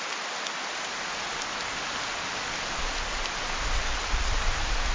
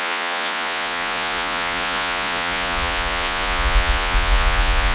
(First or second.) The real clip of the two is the first